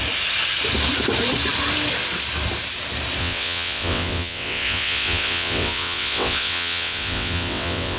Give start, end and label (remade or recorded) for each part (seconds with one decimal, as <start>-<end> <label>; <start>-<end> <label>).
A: 0.0-3.2 recorded; 3.2-8.0 remade